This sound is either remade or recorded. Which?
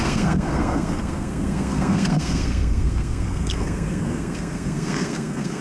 remade